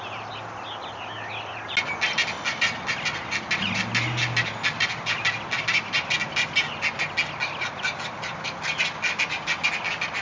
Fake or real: real